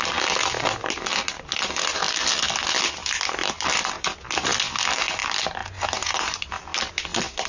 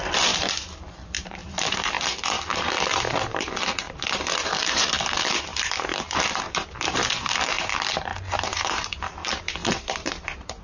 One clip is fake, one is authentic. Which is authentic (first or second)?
first